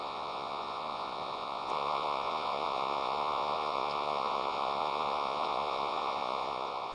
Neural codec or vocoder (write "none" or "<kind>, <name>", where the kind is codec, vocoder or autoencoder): vocoder, Vocos